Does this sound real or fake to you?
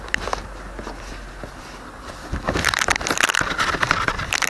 real